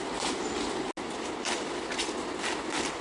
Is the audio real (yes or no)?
yes